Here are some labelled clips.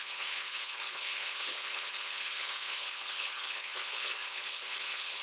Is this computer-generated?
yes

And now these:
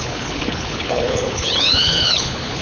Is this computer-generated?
yes